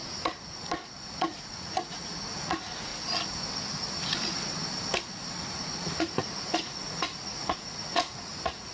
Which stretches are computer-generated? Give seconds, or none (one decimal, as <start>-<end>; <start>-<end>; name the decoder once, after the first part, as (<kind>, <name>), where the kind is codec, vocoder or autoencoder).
0.0-2.9 (vocoder, Vocos); 5.5-8.7

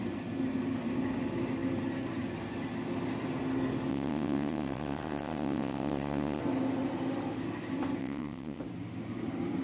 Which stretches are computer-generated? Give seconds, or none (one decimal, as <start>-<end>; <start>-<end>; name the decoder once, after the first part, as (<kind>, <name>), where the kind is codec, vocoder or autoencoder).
3.9-6.4 (vocoder, WaveNeXt); 8.0-8.6

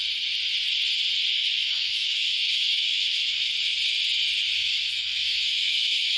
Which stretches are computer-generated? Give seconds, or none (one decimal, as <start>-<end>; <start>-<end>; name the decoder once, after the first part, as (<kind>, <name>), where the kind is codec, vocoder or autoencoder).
1.4-3.5 (autoencoder, DAC-VAE); 4.6-6.2

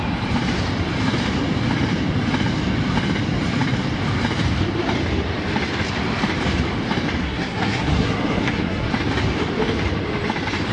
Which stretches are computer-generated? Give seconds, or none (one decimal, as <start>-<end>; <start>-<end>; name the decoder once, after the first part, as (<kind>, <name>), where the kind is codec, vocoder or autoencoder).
7.2-8.9 (codec, SNAC)